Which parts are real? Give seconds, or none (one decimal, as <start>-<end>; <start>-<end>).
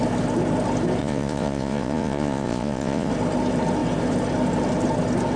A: 0.0-1.0; 3.1-5.4